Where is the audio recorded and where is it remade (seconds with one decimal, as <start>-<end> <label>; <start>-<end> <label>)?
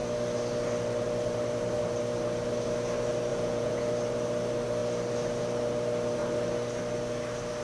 0.0-3.3 recorded; 3.3-3.9 remade; 3.9-7.6 recorded